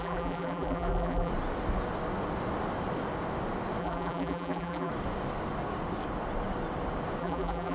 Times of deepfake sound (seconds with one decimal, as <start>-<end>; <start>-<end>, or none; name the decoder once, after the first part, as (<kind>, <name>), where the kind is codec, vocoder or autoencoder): 0.0-1.3 (vocoder, BigVGAN v2); 3.8-4.9; 7.2-7.7